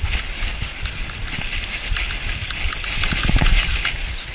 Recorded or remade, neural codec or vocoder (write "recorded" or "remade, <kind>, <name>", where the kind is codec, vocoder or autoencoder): recorded